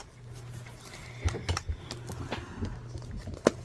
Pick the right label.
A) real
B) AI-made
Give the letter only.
A